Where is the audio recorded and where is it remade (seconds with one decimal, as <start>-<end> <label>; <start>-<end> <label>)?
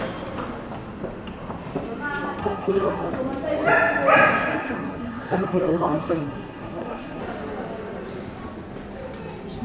0.0-2.4 recorded; 2.4-3.1 remade; 3.1-4.5 recorded; 4.5-7.2 remade; 7.2-9.6 recorded